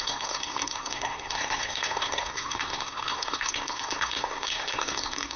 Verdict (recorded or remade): remade